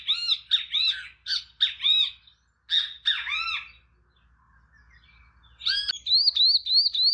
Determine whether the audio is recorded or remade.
recorded